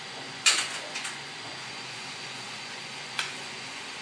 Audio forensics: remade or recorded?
remade